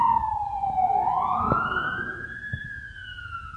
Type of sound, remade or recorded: remade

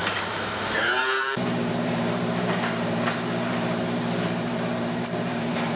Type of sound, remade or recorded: remade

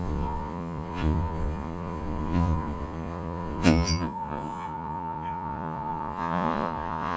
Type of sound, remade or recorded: remade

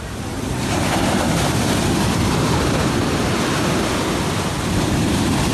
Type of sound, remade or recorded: remade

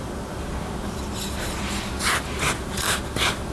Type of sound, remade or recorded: recorded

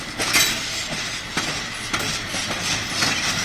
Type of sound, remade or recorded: recorded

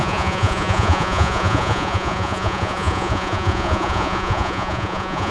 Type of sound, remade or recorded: remade